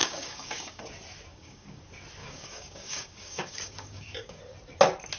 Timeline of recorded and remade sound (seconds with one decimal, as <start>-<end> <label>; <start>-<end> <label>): 0.0-0.8 remade; 0.8-1.3 recorded; 1.3-1.8 remade; 1.8-2.2 recorded; 2.2-4.4 remade; 4.4-5.2 recorded